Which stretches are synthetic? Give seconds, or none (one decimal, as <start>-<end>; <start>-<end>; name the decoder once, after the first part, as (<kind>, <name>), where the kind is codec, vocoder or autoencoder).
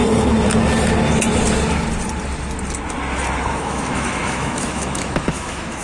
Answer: 3.5-5.8 (autoencoder, DAC-VAE)